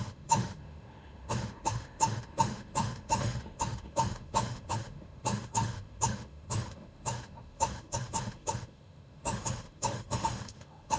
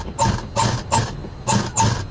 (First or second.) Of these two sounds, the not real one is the first